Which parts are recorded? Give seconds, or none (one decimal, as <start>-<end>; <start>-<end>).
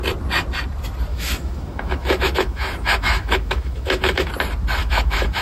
0.0-1.1; 4.3-4.8